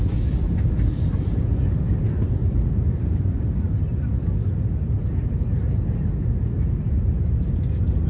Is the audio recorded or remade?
recorded